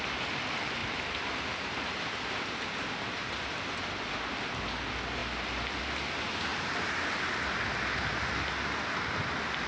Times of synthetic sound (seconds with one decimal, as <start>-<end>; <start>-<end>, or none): 0.8-4.5; 6.5-7.1

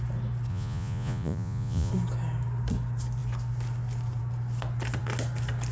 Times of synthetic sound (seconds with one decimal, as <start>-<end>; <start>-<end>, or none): 0.5-1.9

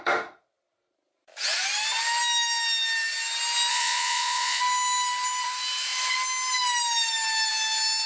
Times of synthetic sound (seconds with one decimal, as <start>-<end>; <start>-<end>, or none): 3.7-4.6

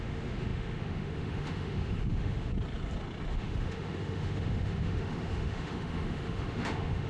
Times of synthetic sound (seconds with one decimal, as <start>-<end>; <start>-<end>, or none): 0.0-2.5; 3.3-7.1